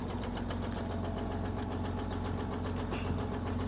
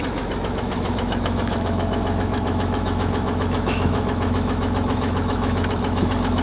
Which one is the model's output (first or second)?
second